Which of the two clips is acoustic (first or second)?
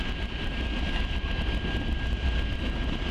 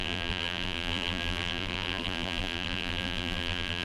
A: first